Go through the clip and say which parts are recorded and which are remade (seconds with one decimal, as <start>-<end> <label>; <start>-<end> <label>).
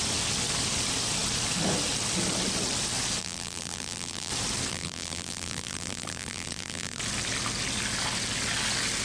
0.0-3.2 recorded; 3.2-4.3 remade; 4.3-4.7 recorded; 4.7-7.0 remade; 7.0-9.0 recorded